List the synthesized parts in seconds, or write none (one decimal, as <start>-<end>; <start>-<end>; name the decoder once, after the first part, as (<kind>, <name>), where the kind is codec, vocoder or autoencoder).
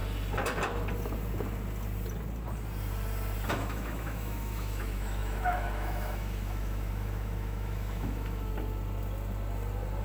3.5-8.5 (autoencoder, DAC-VAE)